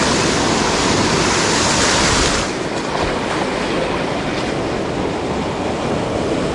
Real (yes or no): yes